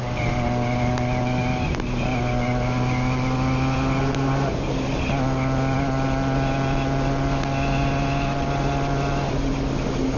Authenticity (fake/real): real